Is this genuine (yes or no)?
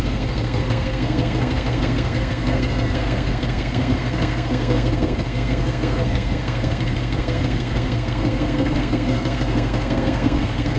no